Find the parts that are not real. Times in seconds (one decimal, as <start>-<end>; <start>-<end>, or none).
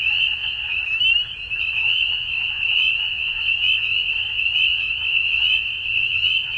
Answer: 0.0-0.8; 1.6-6.6